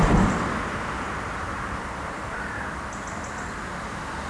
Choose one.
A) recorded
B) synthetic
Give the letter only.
A